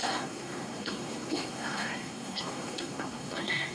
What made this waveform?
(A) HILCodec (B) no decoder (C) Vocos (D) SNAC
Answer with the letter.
D